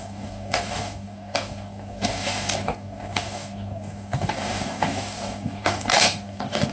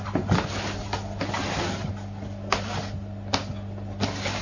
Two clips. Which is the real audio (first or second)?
second